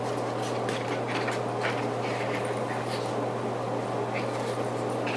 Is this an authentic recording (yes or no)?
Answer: yes